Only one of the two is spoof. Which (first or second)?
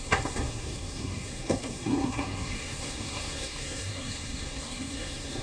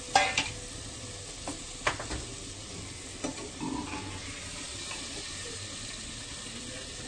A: first